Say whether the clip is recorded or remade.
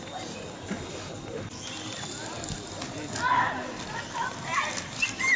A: recorded